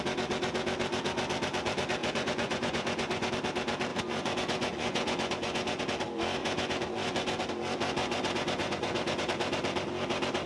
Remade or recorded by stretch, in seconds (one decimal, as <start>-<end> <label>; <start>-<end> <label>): 0.0-2.0 recorded; 2.0-3.3 remade; 3.3-3.9 recorded; 3.9-5.8 remade; 5.8-6.4 recorded; 6.4-7.4 remade; 7.4-8.0 recorded; 8.0-9.2 remade; 9.2-10.5 recorded

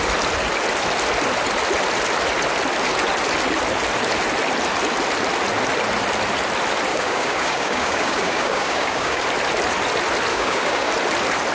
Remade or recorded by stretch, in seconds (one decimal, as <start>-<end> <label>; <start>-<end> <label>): 0.0-6.9 recorded; 6.9-9.2 remade; 9.2-10.3 recorded; 10.3-10.9 remade; 10.9-11.5 recorded

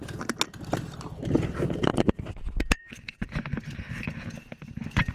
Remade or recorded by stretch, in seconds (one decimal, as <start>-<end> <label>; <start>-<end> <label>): 0.0-5.1 recorded

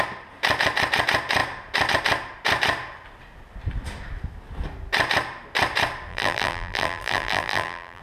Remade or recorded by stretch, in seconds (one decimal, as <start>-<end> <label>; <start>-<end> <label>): 0.0-6.1 recorded; 6.1-8.0 remade

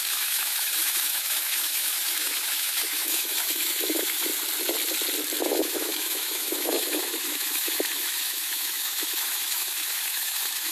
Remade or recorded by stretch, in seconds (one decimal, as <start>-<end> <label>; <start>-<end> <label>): 0.0-4.3 remade; 4.3-5.5 recorded; 5.5-10.7 remade

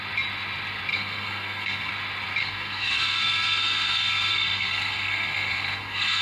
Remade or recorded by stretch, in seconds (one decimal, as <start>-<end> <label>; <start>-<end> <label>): 0.0-0.9 recorded; 0.9-1.9 remade; 1.9-2.4 recorded; 2.4-6.2 remade